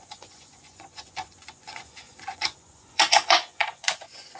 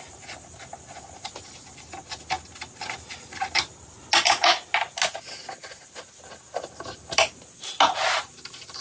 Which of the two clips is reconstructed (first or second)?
first